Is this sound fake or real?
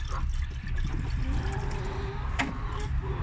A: real